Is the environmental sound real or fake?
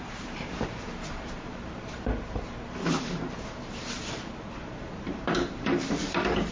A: fake